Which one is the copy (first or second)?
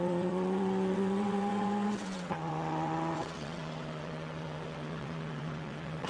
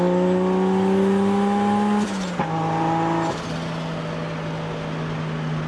first